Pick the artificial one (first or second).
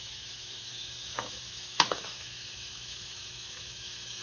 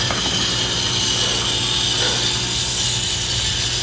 first